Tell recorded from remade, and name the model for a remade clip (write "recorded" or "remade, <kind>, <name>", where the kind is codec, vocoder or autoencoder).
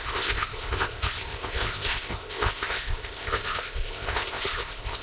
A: remade, codec, ZipCodec